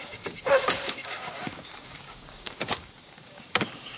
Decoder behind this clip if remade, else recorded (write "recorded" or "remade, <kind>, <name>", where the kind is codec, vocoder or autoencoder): remade, codec, DAC